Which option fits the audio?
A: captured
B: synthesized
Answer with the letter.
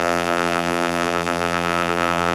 B